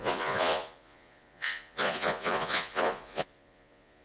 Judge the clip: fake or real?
fake